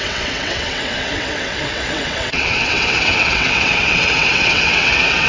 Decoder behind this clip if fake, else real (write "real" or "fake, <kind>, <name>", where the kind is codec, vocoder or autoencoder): fake, vocoder, WaveNeXt